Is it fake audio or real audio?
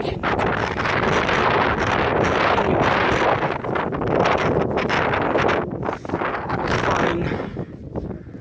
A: real